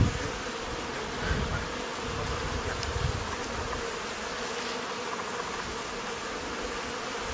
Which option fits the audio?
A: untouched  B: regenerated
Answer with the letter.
A